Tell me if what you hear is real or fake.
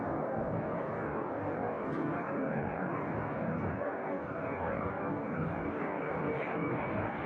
fake